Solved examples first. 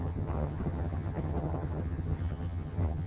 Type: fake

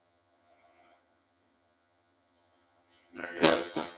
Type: fake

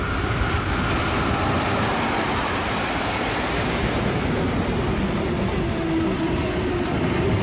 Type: real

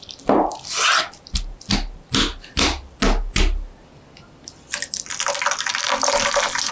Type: real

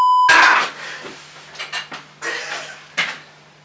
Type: real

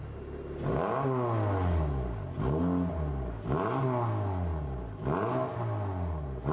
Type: real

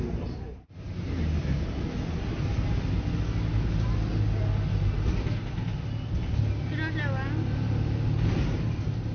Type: real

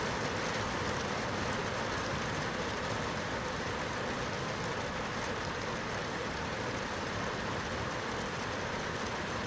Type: real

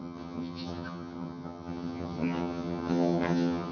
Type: fake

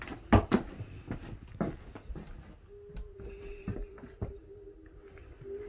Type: real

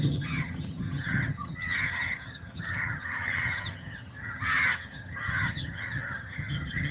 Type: fake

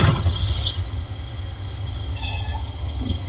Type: fake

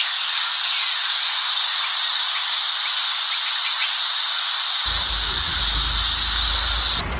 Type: real